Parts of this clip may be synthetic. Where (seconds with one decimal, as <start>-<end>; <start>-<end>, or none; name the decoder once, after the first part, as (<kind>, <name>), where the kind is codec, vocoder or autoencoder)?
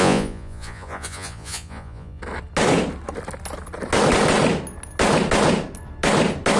0.0-2.2 (vocoder, Vocos)